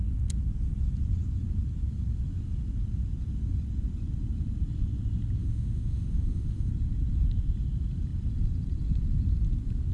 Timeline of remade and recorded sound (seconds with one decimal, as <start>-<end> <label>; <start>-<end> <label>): 0.0-5.4 recorded; 5.4-6.7 remade; 6.7-9.9 recorded